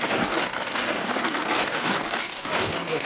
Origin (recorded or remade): remade